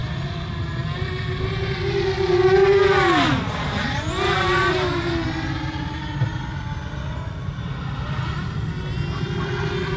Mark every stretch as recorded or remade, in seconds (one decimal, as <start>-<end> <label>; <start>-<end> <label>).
0.0-10.0 recorded